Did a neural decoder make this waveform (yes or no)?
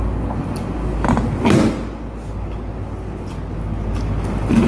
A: no